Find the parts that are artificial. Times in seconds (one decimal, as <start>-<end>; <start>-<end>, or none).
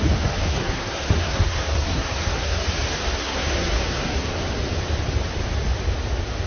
0.4-2.6; 3.2-4.3